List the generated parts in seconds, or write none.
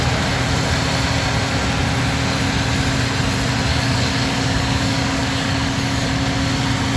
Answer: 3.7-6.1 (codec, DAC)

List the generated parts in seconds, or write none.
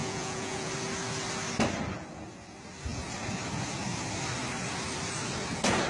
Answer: 0.0-0.7 (vocoder, Vocos)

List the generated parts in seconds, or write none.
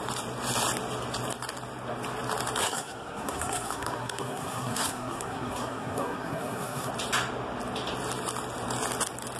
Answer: 2.6-6.9 (codec, SNAC)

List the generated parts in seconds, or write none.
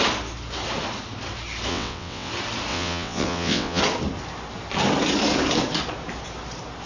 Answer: 1.7-2.3 (vocoder, WaveNeXt); 2.7-3.8